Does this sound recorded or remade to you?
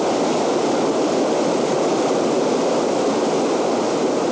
recorded